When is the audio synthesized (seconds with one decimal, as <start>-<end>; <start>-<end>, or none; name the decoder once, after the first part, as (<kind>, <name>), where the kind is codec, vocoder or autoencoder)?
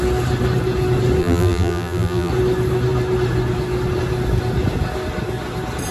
1.2-2.3 (vocoder, BigVGAN v2)